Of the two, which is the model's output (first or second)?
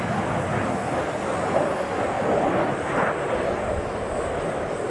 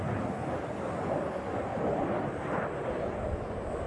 second